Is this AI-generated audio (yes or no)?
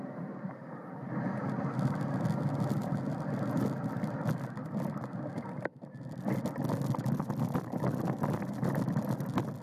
no